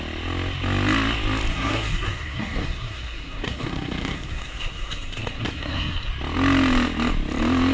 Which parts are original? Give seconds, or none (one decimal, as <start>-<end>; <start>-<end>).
0.0-1.5; 6.1-7.7